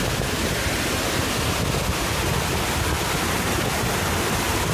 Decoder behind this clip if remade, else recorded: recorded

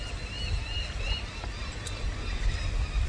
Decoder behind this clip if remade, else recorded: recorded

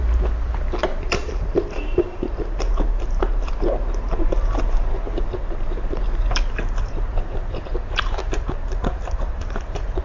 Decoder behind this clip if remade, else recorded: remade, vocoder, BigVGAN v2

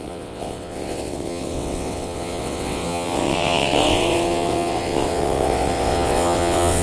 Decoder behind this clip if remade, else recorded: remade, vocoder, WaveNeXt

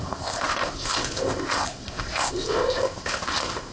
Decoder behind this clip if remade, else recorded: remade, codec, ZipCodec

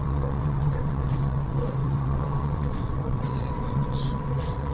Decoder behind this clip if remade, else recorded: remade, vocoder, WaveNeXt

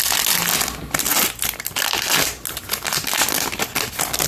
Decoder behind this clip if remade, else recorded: recorded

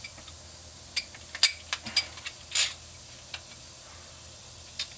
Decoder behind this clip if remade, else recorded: recorded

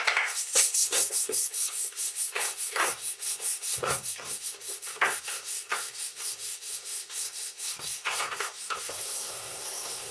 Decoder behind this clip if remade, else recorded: remade, codec, SNAC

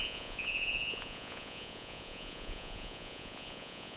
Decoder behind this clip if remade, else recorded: remade, vocoder, Vocos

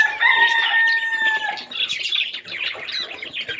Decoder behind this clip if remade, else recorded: recorded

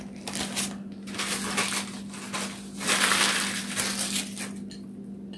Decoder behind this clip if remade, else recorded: recorded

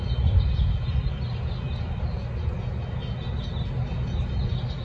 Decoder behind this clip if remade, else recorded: recorded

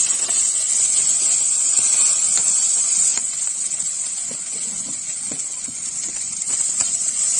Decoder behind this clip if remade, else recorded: remade, vocoder, Vocos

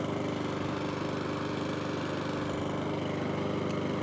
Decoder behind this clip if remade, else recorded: recorded